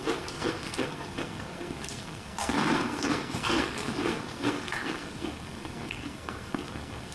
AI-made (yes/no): yes